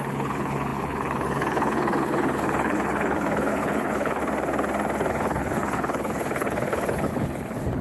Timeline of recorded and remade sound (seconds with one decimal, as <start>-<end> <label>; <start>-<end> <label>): 0.0-4.2 remade; 4.2-5.1 recorded; 5.1-7.8 remade